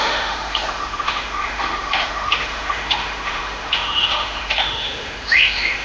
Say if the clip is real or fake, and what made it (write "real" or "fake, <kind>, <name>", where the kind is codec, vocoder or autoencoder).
fake, autoencoder, DAC-VAE